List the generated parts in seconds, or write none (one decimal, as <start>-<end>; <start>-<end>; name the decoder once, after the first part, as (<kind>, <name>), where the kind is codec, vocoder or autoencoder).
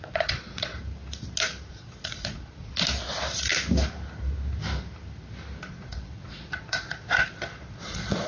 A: 0.0-0.7 (vocoder, Vocos); 1.7-2.7; 5.6-8.3